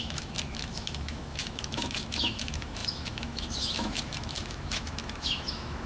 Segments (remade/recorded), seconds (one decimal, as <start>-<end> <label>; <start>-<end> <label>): 0.0-5.9 remade

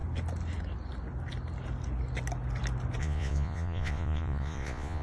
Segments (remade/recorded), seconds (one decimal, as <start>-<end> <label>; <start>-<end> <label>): 0.0-3.0 recorded; 3.0-5.0 remade

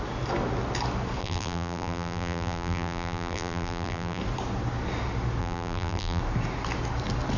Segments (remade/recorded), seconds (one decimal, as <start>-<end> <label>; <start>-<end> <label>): 0.0-1.2 recorded; 1.2-4.2 remade; 4.2-5.4 recorded; 5.4-6.2 remade; 6.2-7.4 recorded

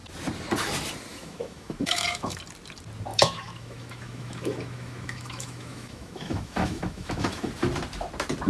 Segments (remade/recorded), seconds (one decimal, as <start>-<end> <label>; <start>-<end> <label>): 0.0-1.1 recorded; 1.1-2.4 remade; 2.4-3.1 recorded; 3.1-7.5 remade; 7.5-8.5 recorded

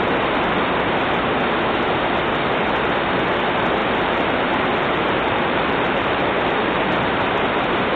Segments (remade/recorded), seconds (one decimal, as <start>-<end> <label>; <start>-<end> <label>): 0.0-3.8 recorded; 3.8-6.8 remade; 6.8-8.0 recorded